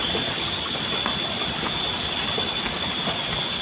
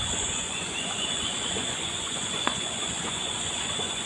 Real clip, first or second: first